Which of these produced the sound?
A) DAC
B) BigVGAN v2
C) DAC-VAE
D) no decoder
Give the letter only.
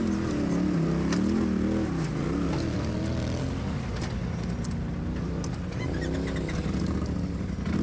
D